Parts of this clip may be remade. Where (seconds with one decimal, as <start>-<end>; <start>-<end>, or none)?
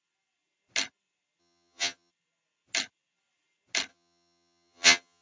1.4-2.1; 3.9-5.2